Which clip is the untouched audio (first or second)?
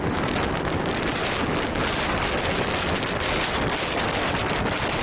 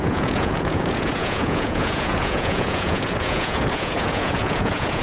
first